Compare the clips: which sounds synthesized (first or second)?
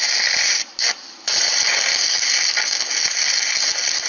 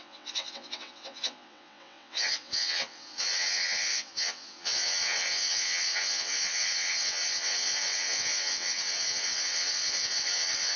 second